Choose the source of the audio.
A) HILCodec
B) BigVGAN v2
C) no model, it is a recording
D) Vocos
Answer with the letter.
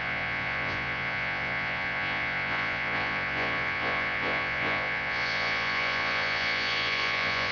D